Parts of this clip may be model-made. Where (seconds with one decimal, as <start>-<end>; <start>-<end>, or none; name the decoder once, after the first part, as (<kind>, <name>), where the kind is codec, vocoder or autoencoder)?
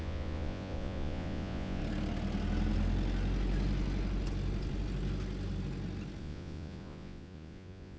0.0-1.8 (vocoder, Vocos); 6.2-8.0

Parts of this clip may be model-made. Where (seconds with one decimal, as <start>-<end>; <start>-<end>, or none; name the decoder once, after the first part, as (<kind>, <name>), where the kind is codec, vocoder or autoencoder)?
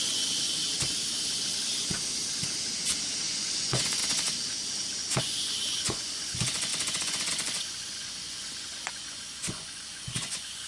0.0-0.6 (vocoder, Vocos); 3.2-4.0; 5.2-10.7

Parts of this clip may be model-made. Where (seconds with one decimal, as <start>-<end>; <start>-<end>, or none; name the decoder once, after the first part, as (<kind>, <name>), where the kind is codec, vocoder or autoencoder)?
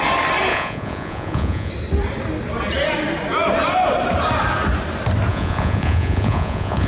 0.5-1.7 (vocoder, Vocos); 5.3-6.9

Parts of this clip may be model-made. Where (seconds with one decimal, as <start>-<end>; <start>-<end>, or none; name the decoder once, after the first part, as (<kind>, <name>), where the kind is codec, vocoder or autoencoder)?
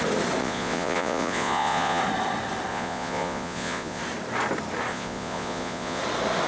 0.4-2.0 (vocoder, Vocos); 2.7-4.0; 4.9-6.0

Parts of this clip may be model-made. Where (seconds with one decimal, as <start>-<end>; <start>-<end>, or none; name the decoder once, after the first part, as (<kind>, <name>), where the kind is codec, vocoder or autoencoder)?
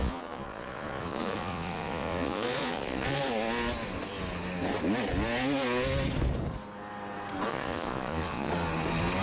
0.0-3.2 (vocoder, Vocos); 7.5-8.5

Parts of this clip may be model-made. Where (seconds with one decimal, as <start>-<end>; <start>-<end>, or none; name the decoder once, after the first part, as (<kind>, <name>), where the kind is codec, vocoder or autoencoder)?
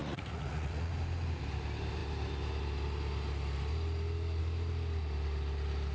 0.0-0.9 (vocoder, Vocos)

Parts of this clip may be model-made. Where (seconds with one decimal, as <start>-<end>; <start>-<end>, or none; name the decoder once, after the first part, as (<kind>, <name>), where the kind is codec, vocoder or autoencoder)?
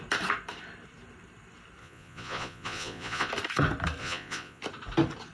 1.8-3.3 (vocoder, Vocos); 4.0-4.6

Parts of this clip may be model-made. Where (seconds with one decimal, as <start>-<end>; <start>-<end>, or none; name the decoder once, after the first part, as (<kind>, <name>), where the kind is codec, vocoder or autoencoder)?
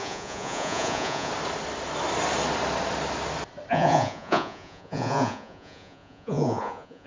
0.0-1.3 (vocoder, Vocos); 3.7-7.1